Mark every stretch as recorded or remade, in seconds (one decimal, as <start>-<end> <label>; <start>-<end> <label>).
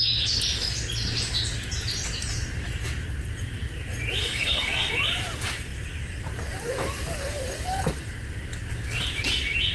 0.0-4.2 recorded; 4.2-4.9 remade; 4.9-9.7 recorded